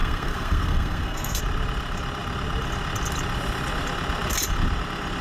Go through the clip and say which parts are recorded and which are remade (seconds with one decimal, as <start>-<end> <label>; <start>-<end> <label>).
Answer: 0.0-1.4 remade; 1.4-5.2 recorded